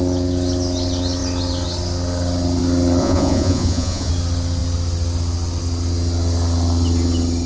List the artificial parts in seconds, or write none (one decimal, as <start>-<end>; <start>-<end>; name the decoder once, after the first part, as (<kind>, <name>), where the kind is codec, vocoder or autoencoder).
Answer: 3.0-4.1 (vocoder, Vocos)